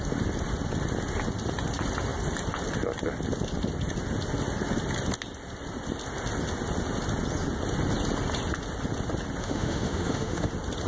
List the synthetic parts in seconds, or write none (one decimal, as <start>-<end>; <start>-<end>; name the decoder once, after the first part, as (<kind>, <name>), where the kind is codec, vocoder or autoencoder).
9.4-10.5 (autoencoder, DAC-VAE)